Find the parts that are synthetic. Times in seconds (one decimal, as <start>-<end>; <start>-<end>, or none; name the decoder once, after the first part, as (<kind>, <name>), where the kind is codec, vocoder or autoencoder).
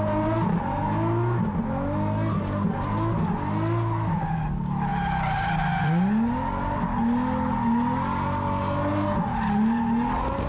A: none